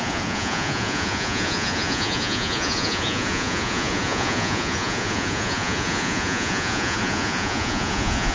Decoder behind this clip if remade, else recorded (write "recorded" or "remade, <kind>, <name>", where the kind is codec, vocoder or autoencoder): remade, vocoder, Vocos